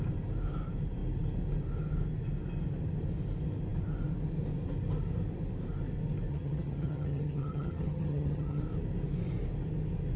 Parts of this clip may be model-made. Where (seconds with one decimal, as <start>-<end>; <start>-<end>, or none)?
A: 6.3-8.6